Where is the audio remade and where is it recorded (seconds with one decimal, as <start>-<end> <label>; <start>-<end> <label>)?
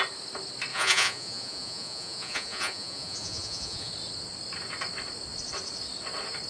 0.0-0.7 recorded; 0.7-3.9 remade; 3.9-6.5 recorded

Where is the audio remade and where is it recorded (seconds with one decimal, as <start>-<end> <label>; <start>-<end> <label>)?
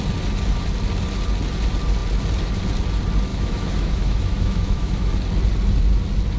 0.0-3.3 recorded; 3.3-5.1 remade; 5.1-6.4 recorded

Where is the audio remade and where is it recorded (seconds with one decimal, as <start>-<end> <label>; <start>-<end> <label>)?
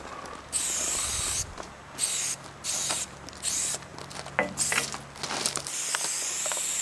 0.0-6.8 recorded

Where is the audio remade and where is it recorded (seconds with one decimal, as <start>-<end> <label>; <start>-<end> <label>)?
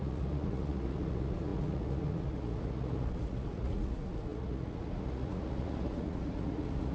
0.0-6.9 remade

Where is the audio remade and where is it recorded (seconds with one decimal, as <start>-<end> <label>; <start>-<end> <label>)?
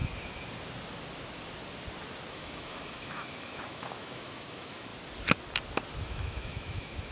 0.0-2.3 recorded; 2.3-4.9 remade; 4.9-6.0 recorded; 6.0-7.1 remade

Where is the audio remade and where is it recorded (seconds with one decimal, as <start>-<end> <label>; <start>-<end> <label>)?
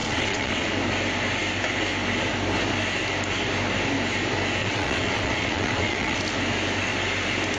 0.0-0.7 remade; 0.7-4.6 recorded; 4.6-6.2 remade; 6.2-7.6 recorded